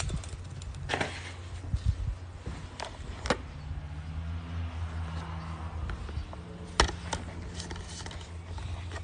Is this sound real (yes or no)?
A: yes